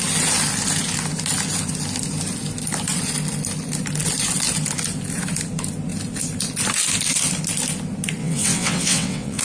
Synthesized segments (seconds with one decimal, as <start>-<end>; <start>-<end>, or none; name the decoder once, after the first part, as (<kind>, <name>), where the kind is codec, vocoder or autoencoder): 8.2-9.4 (vocoder, WaveNeXt)

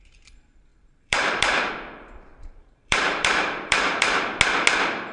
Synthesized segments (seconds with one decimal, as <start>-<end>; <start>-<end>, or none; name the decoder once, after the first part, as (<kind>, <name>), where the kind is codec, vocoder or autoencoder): 0.7-1.7 (vocoder, BigVGAN v2); 2.3-4.2